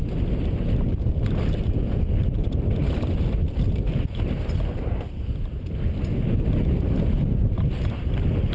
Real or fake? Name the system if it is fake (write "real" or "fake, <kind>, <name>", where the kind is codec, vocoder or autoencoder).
real